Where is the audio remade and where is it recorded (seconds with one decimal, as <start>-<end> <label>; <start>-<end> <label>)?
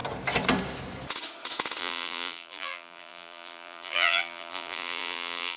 0.0-1.8 recorded; 1.8-5.6 remade